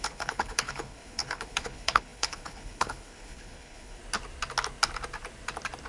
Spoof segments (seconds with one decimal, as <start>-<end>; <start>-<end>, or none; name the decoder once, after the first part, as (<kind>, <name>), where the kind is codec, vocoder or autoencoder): 0.0-4.0 (codec, HILCodec)